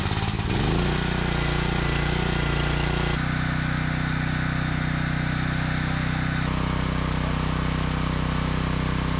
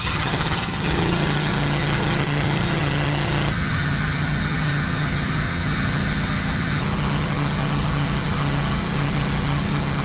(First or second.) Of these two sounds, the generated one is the second